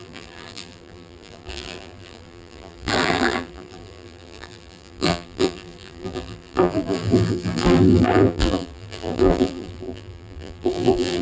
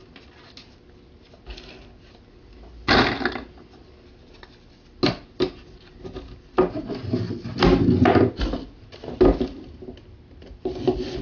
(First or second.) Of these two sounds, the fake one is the first